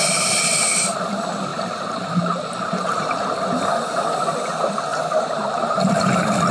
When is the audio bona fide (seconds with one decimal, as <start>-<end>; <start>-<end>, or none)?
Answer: 0.0-1.5; 3.1-4.9; 5.8-6.5